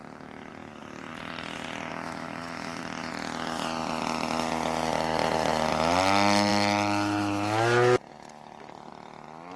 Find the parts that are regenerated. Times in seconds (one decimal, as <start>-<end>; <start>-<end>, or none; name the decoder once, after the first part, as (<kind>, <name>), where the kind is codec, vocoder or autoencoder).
1.9-2.8 (autoencoder, DAC-VAE)